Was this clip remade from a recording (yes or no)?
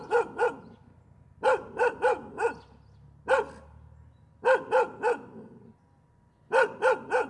no